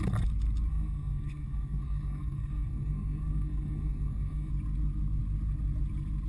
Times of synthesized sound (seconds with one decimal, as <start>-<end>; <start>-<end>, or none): 0.7-4.5